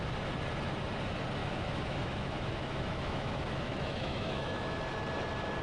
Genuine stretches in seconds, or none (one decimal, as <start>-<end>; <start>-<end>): 0.0-1.4; 4.8-5.6